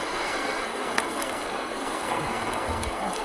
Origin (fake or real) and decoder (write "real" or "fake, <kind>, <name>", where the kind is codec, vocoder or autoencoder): fake, codec, SNAC